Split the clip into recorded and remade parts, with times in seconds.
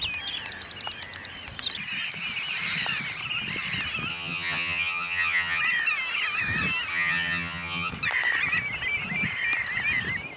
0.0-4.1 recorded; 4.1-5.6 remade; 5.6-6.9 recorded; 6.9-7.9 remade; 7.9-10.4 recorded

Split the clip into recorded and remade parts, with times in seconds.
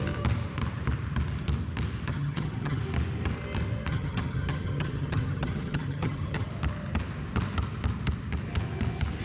0.0-2.1 recorded; 2.1-2.8 remade; 2.8-3.9 recorded; 3.9-6.5 remade; 6.5-9.2 recorded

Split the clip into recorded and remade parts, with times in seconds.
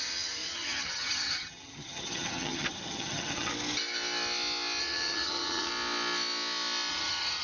0.0-3.5 remade; 3.5-4.8 recorded; 4.8-5.7 remade; 5.7-6.9 recorded; 6.9-7.4 remade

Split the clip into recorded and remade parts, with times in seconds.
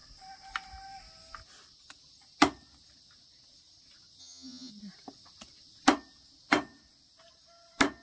0.0-4.2 recorded; 4.2-4.7 remade; 4.7-8.0 recorded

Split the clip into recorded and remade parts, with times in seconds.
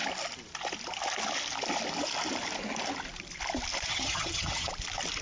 0.0-3.9 recorded; 3.9-4.7 remade; 4.7-5.2 recorded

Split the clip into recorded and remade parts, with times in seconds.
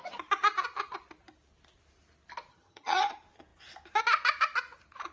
0.0-2.5 recorded; 2.5-3.1 remade; 3.1-5.1 recorded